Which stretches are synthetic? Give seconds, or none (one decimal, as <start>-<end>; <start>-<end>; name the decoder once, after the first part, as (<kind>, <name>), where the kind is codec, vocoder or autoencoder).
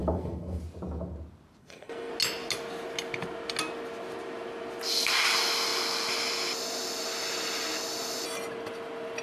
0.0-0.6 (codec, SNAC); 1.6-2.1